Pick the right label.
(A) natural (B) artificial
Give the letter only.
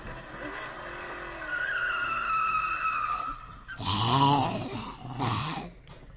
A